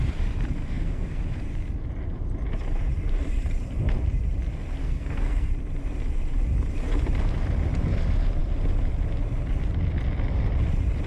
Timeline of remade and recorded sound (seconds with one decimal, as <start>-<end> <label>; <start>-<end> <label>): 0.0-0.6 recorded; 0.6-1.2 remade; 1.2-4.8 recorded; 4.8-5.5 remade; 5.5-11.1 recorded